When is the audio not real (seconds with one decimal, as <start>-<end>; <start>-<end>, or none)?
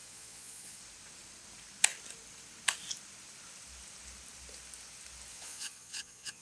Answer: 0.0-0.8; 5.3-6.4